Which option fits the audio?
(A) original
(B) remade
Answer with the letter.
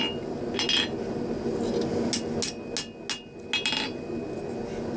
A